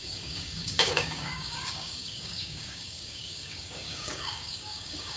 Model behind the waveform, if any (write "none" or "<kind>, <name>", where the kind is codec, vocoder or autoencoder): codec, DAC